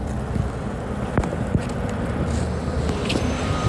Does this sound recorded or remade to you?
recorded